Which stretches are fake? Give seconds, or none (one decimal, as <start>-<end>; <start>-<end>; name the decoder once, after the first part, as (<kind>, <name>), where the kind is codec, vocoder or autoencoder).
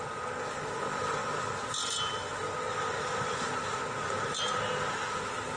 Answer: none